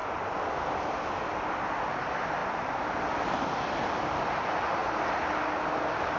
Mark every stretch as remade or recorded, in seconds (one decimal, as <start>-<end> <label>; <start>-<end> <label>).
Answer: 0.0-6.2 recorded